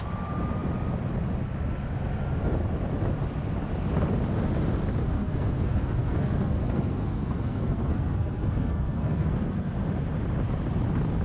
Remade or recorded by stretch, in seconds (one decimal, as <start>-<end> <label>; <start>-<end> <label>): 0.0-5.0 recorded; 5.0-9.7 remade; 9.7-11.2 recorded

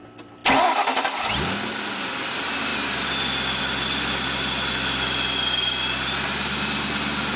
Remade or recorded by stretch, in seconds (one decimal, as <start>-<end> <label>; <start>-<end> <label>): 0.0-7.4 recorded